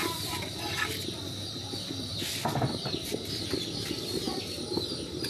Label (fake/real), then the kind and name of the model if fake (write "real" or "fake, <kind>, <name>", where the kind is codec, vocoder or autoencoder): fake, vocoder, BigVGAN v2